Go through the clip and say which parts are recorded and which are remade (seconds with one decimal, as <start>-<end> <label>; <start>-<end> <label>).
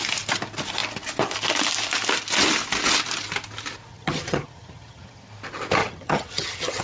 0.0-3.9 recorded; 3.9-5.3 remade; 5.3-5.8 recorded; 5.8-6.8 remade